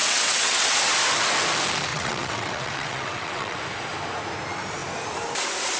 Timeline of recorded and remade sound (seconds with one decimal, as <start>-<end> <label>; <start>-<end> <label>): 0.0-0.8 remade; 0.8-1.9 recorded; 1.9-3.6 remade; 3.6-5.8 recorded